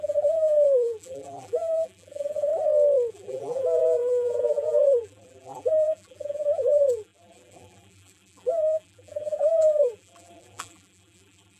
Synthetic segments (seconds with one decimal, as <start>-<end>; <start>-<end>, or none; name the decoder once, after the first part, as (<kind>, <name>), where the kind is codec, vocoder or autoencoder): 0.0-2.5 (vocoder, BigVGAN v2); 3.1-11.6